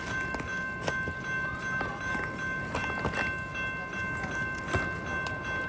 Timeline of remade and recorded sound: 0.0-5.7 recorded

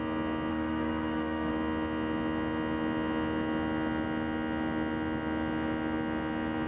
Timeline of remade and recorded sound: 0.0-0.5 recorded; 0.5-1.5 remade; 1.5-6.7 recorded

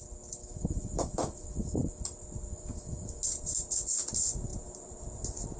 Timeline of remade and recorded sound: 0.0-0.4 recorded; 0.4-2.0 remade; 2.0-2.5 recorded; 2.5-3.2 remade; 3.2-5.6 recorded